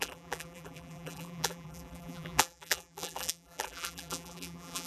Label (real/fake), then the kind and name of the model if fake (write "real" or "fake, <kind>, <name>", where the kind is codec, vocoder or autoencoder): fake, vocoder, BigVGAN v2